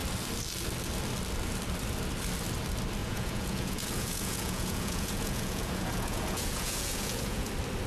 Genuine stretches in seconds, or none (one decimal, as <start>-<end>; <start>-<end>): 0.0-3.0; 7.5-7.9